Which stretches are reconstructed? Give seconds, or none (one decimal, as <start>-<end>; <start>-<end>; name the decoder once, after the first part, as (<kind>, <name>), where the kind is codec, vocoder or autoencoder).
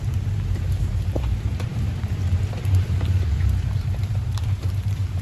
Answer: 0.0-5.2 (vocoder, BigVGAN v2)